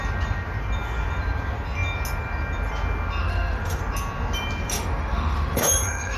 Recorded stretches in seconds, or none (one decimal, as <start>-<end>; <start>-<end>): 0.0-3.2; 3.8-4.7